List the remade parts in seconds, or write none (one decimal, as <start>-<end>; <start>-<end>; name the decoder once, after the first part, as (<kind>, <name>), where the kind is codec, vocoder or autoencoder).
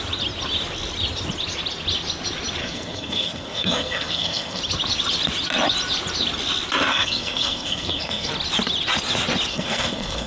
2.6-4.6 (codec, SNAC); 6.9-8.3; 9.5-10.3